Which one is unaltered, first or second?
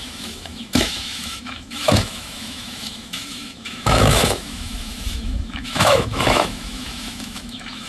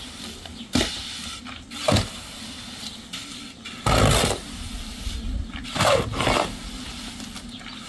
second